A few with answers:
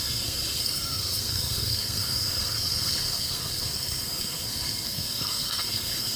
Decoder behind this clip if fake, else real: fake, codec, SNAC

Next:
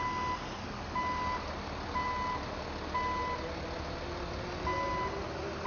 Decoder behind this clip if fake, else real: real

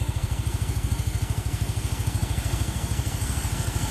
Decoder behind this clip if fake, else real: fake, codec, SNAC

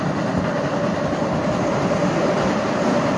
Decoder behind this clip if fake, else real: real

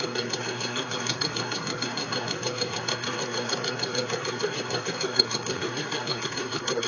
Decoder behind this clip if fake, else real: fake, codec, SNAC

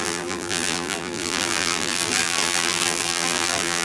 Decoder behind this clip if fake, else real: fake, vocoder, BigVGAN v2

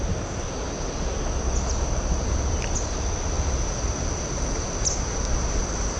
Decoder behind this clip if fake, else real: real